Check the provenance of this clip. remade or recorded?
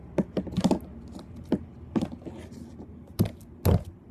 recorded